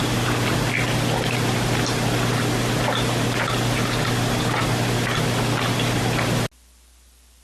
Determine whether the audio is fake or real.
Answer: real